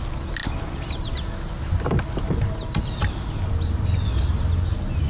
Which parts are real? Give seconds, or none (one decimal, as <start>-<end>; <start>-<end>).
0.0-5.1